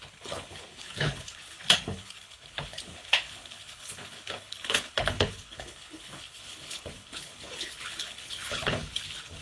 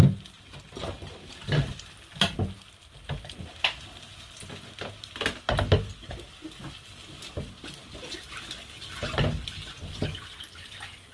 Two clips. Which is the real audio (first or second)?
second